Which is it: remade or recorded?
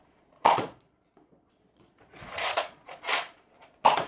remade